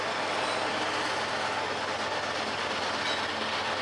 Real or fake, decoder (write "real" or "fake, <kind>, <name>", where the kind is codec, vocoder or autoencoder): real